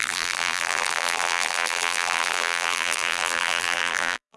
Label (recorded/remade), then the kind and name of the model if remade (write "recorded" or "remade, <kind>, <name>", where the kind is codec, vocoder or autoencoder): remade, vocoder, BigVGAN v2